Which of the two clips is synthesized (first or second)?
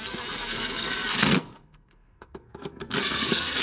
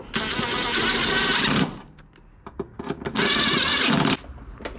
first